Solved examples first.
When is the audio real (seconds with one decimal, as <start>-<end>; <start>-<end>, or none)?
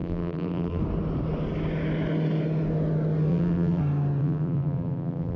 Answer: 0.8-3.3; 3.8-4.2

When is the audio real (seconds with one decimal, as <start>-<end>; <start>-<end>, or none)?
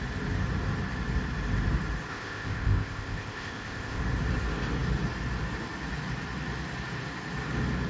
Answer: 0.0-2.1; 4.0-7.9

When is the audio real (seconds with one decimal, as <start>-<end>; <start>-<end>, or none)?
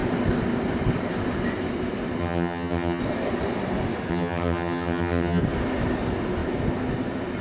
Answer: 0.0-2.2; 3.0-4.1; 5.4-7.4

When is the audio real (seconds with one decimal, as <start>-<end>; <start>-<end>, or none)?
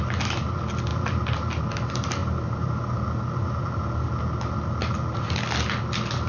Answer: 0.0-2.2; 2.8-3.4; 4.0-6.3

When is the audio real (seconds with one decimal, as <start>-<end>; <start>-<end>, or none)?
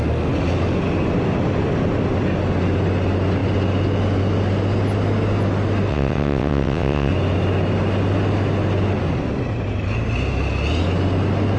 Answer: 0.0-5.9; 7.1-11.6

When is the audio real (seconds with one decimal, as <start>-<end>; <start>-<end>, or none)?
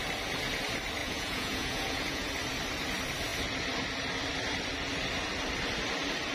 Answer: 0.0-1.0; 2.3-6.3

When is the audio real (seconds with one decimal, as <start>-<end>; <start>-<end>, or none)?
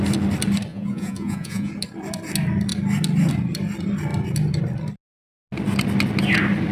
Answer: 0.0-0.7; 1.7-6.7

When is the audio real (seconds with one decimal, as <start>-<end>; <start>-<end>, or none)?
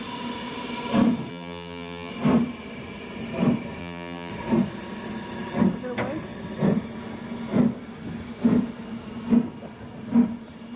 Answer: 0.0-1.3; 2.1-3.8; 4.3-10.8